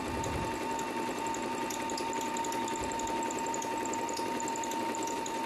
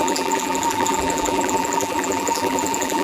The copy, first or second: second